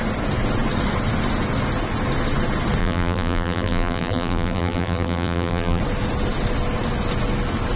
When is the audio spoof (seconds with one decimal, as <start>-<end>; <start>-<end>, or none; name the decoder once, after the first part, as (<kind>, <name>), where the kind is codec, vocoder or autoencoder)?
2.8-5.8 (vocoder, BigVGAN v2)